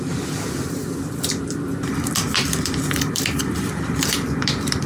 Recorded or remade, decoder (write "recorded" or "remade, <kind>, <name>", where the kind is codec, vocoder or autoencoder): remade, vocoder, BigVGAN v2